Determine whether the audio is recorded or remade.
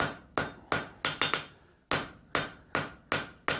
recorded